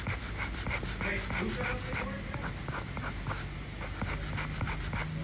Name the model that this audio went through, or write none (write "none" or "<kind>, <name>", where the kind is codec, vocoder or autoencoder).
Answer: none